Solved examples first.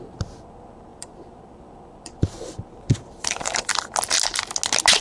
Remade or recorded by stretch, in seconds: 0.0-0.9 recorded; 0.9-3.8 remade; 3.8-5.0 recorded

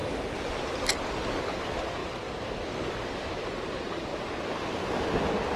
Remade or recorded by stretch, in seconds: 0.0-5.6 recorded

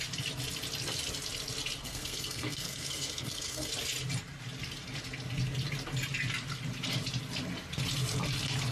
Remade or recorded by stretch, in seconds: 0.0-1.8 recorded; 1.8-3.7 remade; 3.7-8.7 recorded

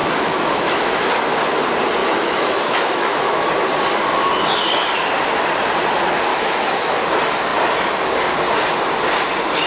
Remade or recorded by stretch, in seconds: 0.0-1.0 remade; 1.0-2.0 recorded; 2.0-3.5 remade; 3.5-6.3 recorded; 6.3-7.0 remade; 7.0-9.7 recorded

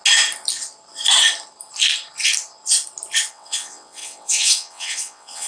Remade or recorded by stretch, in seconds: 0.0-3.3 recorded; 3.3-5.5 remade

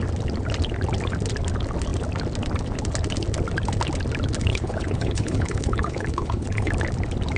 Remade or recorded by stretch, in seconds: 0.0-4.5 recorded; 4.5-6.7 remade; 6.7-7.4 recorded